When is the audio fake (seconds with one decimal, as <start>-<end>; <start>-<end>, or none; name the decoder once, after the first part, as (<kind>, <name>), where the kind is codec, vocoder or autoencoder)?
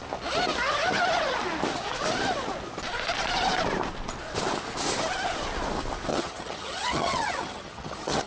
6.1-8.3 (vocoder, HiFi-GAN)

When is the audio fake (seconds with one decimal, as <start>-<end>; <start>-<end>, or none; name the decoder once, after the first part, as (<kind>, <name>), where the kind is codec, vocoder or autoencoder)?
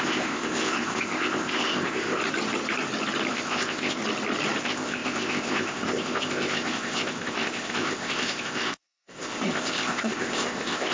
0.0-2.2 (codec, ZipCodec); 3.3-4.0; 4.6-10.9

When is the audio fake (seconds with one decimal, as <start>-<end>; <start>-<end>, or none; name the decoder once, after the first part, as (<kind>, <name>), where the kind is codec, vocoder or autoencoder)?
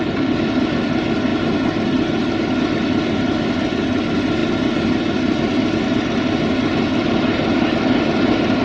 0.0-1.3 (vocoder, BigVGAN v2); 2.3-4.4; 4.9-5.5; 7.0-8.6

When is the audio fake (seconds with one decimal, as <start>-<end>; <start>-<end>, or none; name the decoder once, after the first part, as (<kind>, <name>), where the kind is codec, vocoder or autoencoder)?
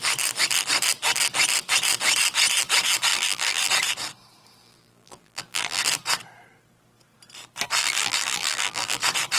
3.1-3.7 (vocoder, BigVGAN v2); 4.6-5.8; 7.8-9.0